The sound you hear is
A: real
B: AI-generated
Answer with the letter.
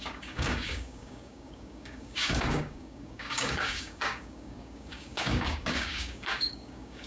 B